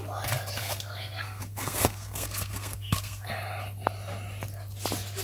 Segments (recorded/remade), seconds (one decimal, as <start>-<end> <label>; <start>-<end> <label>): 0.0-0.6 recorded; 0.6-3.3 remade; 3.3-5.2 recorded